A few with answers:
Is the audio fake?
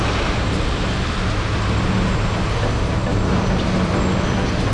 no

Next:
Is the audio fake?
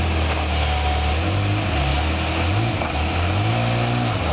no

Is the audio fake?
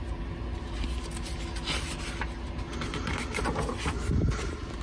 no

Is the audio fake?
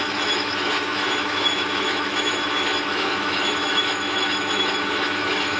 yes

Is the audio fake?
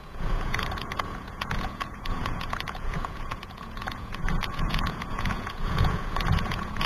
yes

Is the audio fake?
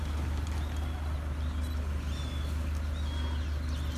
no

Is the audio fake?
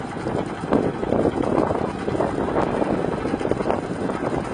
no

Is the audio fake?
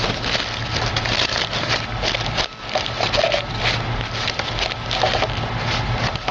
no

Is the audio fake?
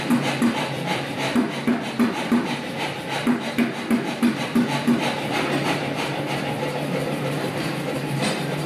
yes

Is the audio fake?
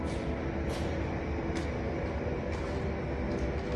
no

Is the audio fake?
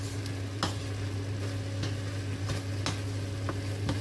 no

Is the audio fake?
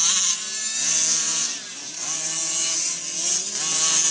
no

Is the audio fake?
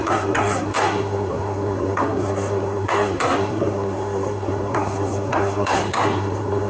yes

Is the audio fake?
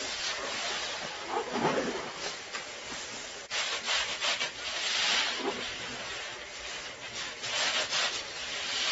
no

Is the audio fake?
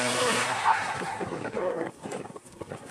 yes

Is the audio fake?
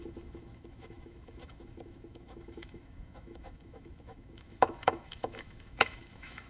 yes